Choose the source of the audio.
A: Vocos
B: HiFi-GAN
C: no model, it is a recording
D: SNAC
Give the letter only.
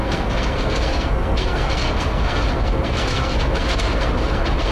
D